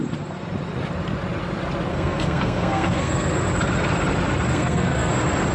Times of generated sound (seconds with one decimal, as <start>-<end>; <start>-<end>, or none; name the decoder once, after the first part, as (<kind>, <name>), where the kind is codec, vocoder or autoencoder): 1.9-3.4 (codec, SNAC); 4.5-5.1